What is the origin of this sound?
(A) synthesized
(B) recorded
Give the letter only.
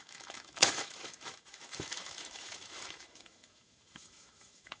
A